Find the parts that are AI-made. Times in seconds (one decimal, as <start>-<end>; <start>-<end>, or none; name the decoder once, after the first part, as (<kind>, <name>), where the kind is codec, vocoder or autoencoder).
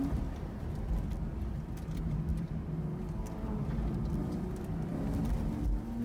none